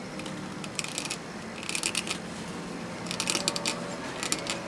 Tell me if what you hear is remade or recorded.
recorded